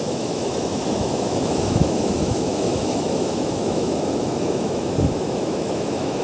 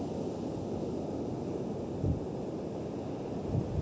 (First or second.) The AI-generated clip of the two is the first